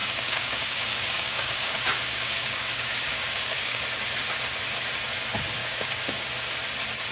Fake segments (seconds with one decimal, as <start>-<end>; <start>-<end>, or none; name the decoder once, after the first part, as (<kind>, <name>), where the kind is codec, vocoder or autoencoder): 0.0-3.8 (codec, DAC); 5.6-6.3